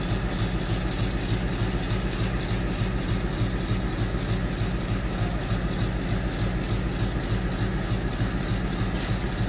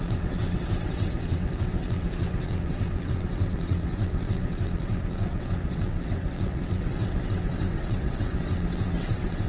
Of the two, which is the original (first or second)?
first